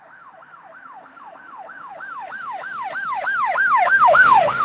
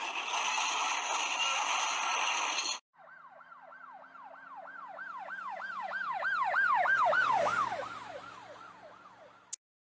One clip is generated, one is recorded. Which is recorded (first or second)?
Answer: second